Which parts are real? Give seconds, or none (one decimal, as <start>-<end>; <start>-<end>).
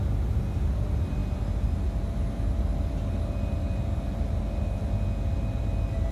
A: 0.0-6.1